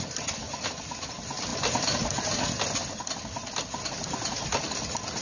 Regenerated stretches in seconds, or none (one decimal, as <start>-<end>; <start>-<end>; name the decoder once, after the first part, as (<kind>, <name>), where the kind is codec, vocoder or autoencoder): none